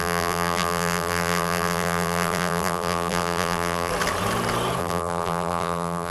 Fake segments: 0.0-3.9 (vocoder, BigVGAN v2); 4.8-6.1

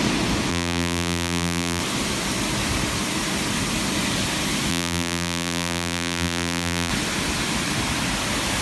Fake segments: 0.5-1.8 (vocoder, BigVGAN v2); 4.7-6.9

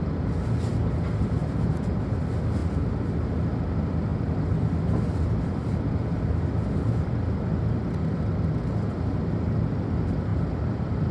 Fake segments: 4.1-8.6 (vocoder, BigVGAN v2); 10.3-11.1

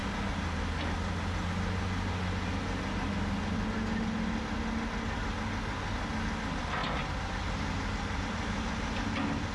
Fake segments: none

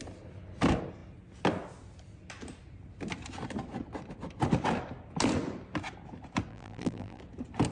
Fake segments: 6.5-7.2 (vocoder, BigVGAN v2)

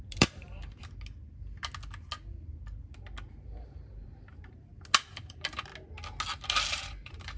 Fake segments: 0.0-0.8 (vocoder, BigVGAN v2); 3.4-4.7; 5.2-5.7; 6.7-7.4